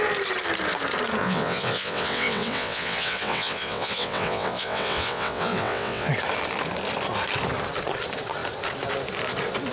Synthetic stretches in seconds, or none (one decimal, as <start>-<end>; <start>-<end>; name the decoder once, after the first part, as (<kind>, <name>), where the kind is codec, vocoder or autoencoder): 1.2-6.1 (vocoder, WaveNeXt)